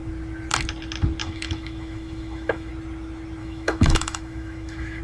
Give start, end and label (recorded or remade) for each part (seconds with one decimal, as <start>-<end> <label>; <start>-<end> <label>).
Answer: 0.0-1.2 recorded; 1.2-2.7 remade; 2.7-3.4 recorded; 3.4-5.0 remade